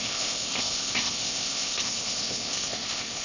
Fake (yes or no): yes